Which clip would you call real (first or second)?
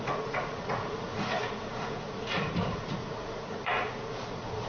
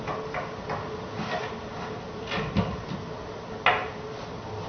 second